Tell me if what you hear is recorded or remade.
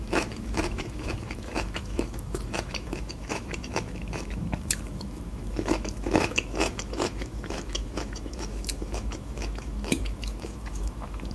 remade